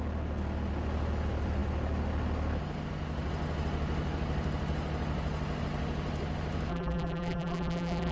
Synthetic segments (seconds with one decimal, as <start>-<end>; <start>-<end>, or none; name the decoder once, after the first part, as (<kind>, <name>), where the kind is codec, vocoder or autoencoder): 6.7-8.1 (vocoder, BigVGAN v2)